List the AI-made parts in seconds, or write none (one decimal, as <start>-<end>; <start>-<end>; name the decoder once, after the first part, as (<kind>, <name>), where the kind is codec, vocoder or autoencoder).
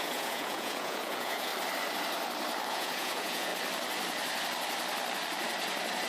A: 0.0-1.5 (vocoder, Vocos); 2.7-3.5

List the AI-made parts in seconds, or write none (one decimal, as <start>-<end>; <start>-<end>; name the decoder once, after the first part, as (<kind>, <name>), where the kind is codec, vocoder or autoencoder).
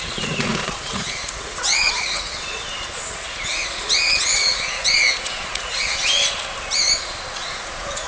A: 0.0-6.0 (vocoder, Vocos); 7.3-8.1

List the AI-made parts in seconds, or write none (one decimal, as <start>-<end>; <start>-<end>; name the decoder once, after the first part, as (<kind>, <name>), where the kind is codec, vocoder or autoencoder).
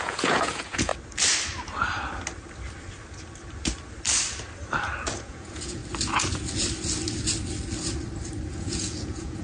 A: 0.0-0.9 (vocoder, Vocos); 5.1-5.8; 8.5-9.4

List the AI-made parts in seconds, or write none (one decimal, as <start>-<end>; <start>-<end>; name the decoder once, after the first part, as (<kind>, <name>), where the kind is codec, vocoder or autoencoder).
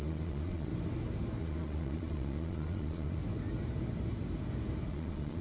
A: 0.0-0.7 (vocoder, Vocos); 1.4-3.2; 4.9-5.4